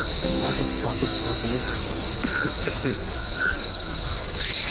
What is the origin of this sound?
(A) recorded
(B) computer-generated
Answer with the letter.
B